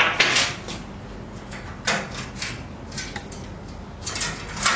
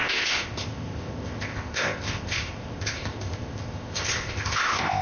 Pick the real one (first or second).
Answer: first